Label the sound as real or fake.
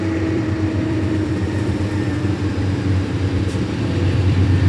fake